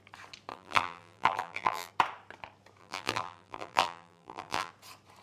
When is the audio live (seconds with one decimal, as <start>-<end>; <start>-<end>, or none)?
0.0-0.5; 1.9-2.8; 4.7-5.2